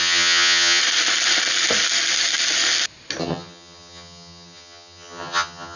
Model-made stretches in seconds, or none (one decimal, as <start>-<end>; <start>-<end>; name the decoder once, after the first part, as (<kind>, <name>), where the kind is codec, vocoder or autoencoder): 0.0-0.8 (vocoder, HiFi-GAN); 3.2-5.8